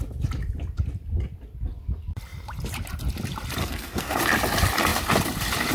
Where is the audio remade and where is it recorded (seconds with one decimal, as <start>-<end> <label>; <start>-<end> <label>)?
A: 0.0-3.6 recorded; 3.6-4.2 remade; 4.2-5.7 recorded